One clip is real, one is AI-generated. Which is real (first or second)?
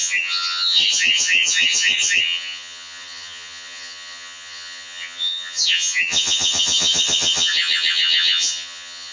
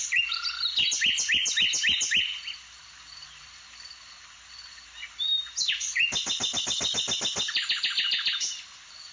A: second